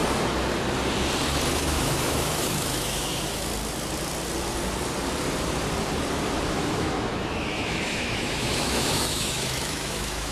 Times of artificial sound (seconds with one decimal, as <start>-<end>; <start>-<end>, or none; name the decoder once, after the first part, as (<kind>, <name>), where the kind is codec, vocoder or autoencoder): 1.5-3.5 (autoencoder, DAC-VAE); 6.5-10.3